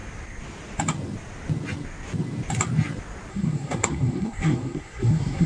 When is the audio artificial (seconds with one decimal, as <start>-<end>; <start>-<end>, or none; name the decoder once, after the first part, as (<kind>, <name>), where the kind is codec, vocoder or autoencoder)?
3.3-5.5 (codec, SNAC)

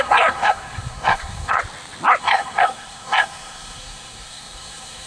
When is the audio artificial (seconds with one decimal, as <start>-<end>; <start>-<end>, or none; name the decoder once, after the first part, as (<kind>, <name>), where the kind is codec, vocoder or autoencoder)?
0.0-1.6 (codec, SNAC); 2.2-5.1